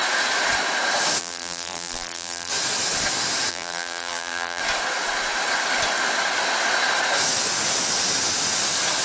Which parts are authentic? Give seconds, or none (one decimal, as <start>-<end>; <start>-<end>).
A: 0.0-1.2; 2.5-3.5; 4.6-9.0